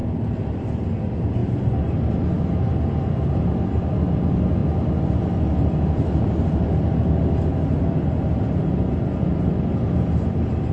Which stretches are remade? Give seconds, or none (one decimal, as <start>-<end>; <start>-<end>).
none